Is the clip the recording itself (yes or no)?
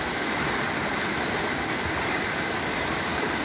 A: yes